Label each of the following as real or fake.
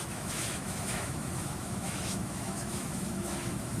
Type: fake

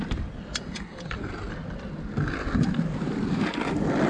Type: real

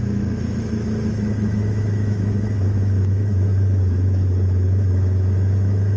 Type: fake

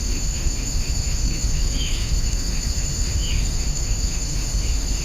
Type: fake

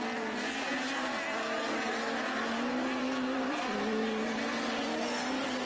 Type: real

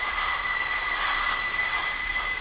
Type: real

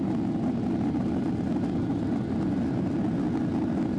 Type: real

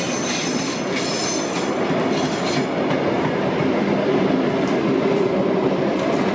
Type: real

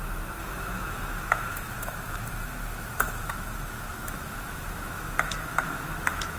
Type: fake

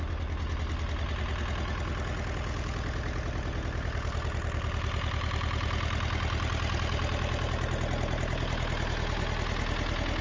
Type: real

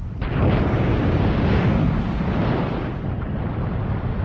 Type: real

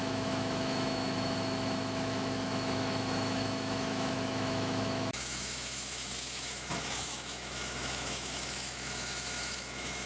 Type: fake